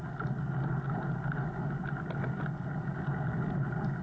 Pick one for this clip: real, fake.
real